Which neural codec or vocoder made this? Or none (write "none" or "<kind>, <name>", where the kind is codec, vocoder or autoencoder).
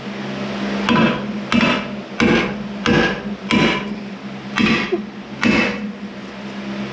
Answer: none